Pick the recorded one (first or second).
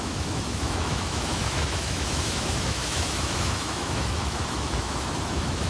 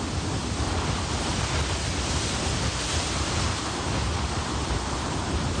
second